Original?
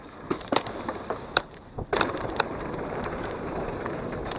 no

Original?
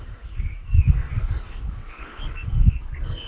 no